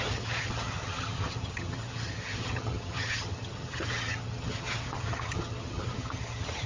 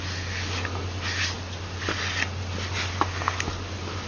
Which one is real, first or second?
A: second